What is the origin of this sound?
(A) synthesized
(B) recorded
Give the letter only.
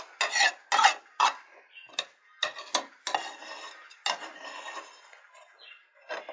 B